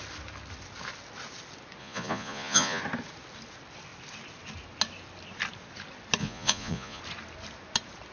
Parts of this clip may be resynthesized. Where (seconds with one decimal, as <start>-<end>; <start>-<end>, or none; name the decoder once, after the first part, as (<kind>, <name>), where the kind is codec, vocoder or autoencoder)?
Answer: 1.8-2.8 (vocoder, Vocos); 6.2-7.0